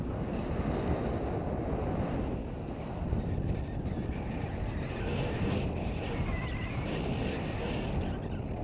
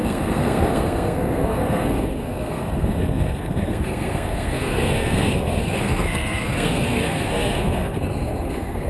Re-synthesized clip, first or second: second